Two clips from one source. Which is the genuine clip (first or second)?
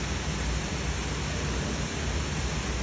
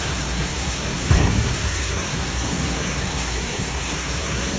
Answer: first